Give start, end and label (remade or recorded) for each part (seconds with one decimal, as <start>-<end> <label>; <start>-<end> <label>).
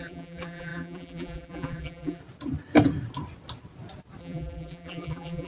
0.0-2.2 remade; 2.2-4.2 recorded; 4.2-5.5 remade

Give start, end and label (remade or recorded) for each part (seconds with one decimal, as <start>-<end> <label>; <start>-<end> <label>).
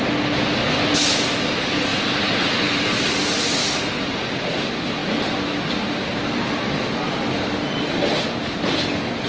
0.0-1.9 recorded; 1.9-3.4 remade; 3.4-9.3 recorded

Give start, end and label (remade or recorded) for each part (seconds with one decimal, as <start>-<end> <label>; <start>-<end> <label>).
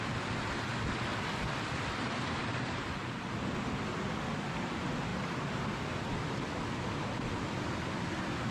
0.0-8.5 recorded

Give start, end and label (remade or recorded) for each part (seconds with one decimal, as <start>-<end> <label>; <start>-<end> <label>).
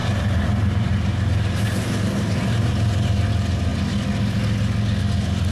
0.0-3.3 remade; 3.3-5.5 recorded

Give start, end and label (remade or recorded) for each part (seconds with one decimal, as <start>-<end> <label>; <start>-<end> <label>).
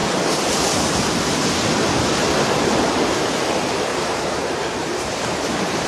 0.0-3.9 recorded; 3.9-5.9 remade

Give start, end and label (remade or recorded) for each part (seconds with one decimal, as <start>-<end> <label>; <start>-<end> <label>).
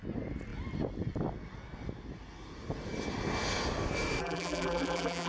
0.0-4.2 recorded; 4.2-5.3 remade